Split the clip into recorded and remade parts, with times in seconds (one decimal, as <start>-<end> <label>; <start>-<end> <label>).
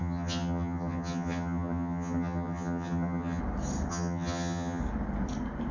0.0-3.4 remade; 3.4-3.9 recorded; 3.9-4.8 remade; 4.8-5.7 recorded